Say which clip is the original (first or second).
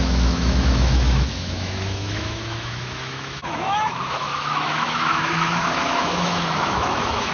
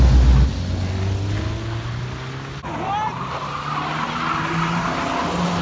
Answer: second